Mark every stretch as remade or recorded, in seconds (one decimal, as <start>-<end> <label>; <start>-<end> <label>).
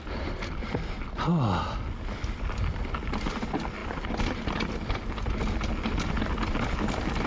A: 0.0-3.8 recorded; 3.8-4.7 remade; 4.7-7.3 recorded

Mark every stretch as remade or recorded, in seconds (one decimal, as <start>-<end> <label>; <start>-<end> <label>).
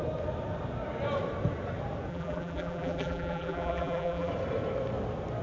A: 0.0-2.1 recorded; 2.1-4.3 remade; 4.3-5.4 recorded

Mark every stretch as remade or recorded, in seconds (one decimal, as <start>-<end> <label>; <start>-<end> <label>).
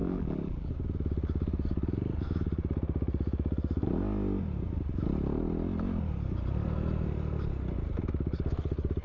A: 0.0-0.7 remade; 0.7-9.0 recorded